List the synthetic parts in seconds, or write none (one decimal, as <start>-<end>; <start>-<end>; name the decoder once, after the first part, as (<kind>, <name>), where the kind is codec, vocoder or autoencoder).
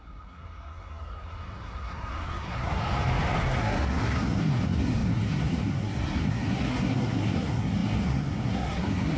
0.0-2.8 (codec, SNAC); 3.4-9.2